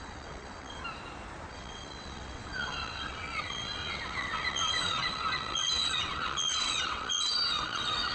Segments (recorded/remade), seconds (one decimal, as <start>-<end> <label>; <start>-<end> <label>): 0.0-0.8 remade; 0.8-1.5 recorded; 1.5-8.1 remade